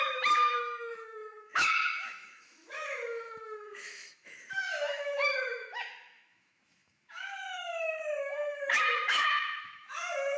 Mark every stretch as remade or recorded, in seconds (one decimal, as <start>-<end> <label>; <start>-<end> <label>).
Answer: 0.0-10.4 remade